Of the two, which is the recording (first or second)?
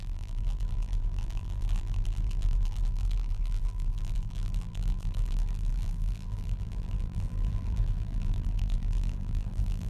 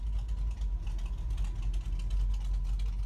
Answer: second